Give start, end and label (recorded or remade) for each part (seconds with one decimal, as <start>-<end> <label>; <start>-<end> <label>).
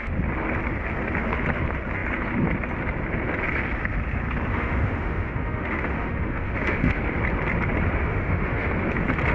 0.0-4.5 recorded; 4.5-7.0 remade; 7.0-8.1 recorded; 8.1-8.7 remade; 8.7-9.3 recorded